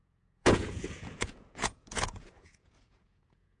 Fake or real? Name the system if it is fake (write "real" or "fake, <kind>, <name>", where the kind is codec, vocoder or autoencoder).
fake, vocoder, Vocos